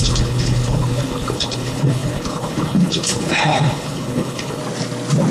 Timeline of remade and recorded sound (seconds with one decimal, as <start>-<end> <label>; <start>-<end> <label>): 0.0-4.6 remade; 4.6-5.3 recorded